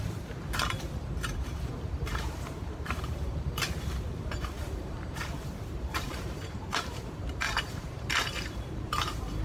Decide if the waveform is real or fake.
fake